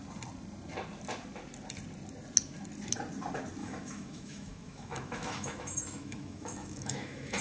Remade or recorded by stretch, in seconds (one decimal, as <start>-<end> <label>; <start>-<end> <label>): 0.0-3.6 recorded; 3.6-7.4 remade